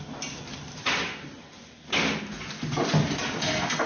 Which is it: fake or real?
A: real